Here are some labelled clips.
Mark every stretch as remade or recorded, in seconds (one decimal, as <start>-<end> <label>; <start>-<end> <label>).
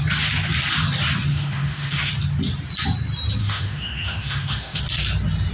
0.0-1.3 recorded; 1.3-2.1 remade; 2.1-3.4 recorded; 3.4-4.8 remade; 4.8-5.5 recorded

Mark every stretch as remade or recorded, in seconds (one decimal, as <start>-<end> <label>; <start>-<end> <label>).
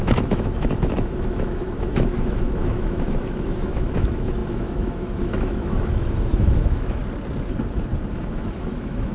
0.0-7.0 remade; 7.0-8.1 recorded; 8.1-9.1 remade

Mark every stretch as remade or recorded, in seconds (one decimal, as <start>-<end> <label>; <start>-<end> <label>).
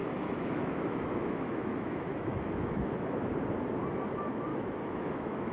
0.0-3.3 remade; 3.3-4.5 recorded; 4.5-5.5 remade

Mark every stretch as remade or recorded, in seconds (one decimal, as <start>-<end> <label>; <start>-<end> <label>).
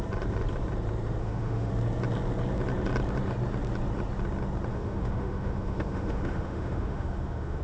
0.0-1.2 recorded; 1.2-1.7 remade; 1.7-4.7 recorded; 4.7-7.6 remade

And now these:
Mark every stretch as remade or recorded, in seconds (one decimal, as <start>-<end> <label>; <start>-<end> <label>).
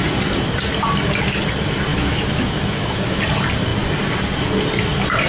0.0-1.9 recorded; 1.9-3.2 remade; 3.2-5.3 recorded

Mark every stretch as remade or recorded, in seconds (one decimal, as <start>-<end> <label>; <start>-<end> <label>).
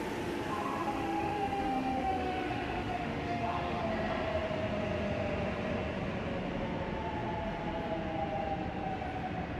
0.0-0.6 recorded; 0.6-3.8 remade; 3.8-9.6 recorded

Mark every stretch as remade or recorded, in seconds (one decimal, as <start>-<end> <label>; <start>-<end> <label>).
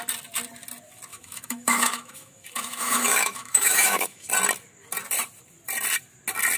0.0-1.1 recorded; 1.1-4.3 remade; 4.3-6.6 recorded